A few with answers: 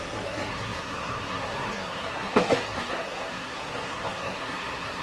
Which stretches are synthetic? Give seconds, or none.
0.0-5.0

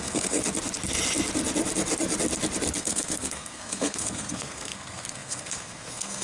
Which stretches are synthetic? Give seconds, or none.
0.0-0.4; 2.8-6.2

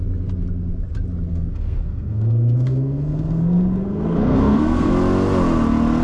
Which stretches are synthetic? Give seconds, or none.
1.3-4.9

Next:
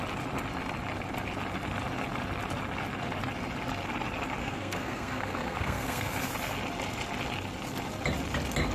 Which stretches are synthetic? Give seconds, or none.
4.4-6.1